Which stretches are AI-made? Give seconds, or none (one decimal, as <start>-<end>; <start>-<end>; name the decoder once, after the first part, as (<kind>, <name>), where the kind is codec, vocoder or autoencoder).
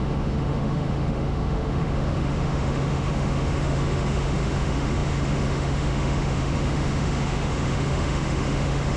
0.0-9.0 (autoencoder, DAC-VAE)